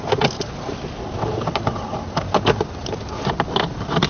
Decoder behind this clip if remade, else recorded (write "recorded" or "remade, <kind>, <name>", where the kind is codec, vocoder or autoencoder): recorded